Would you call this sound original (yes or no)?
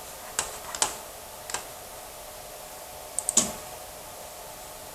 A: yes